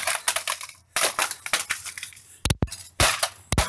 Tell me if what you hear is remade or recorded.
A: recorded